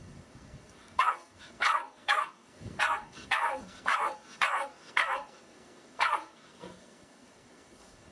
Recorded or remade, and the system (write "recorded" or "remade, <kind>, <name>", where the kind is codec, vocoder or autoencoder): remade, codec, SNAC